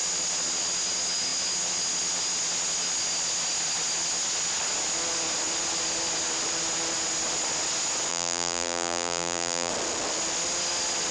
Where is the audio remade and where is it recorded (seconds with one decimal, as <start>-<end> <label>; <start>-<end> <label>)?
0.0-8.1 recorded; 8.1-9.7 remade; 9.7-11.1 recorded